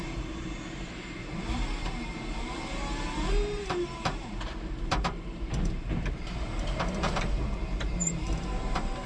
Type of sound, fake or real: fake